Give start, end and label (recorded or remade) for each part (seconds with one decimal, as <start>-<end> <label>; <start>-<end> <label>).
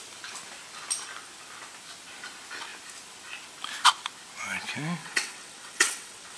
0.0-5.0 recorded; 5.0-6.4 remade